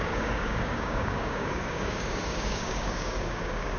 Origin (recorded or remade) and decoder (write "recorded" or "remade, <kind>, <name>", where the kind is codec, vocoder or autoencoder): remade, codec, DAC